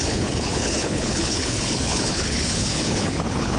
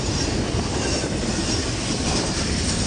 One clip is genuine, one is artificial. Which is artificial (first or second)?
first